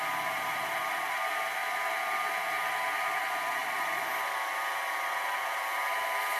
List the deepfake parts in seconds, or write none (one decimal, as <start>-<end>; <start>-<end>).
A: none